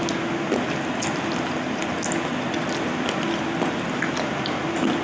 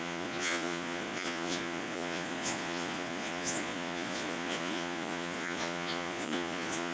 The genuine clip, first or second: first